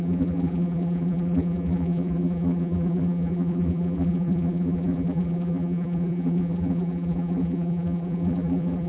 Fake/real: fake